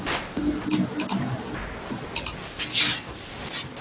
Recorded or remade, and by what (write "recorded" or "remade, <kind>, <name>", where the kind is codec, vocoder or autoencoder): recorded